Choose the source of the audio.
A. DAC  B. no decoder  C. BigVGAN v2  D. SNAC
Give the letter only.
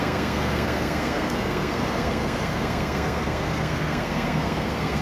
D